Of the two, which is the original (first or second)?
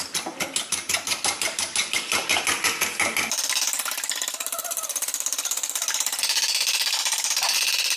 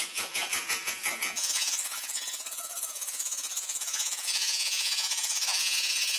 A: first